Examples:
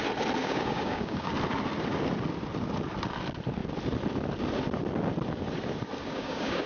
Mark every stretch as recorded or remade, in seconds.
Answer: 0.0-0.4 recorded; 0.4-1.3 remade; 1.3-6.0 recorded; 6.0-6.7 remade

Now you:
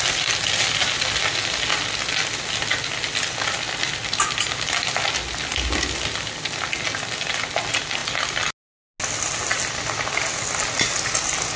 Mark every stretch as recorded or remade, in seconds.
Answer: 0.0-11.6 recorded

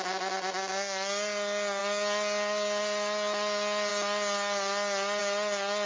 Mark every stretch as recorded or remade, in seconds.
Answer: 0.0-5.9 recorded